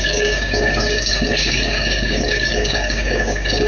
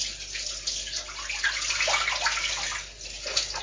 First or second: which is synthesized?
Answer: first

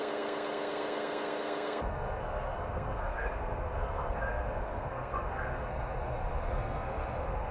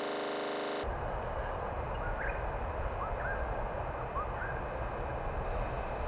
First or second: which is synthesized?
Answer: first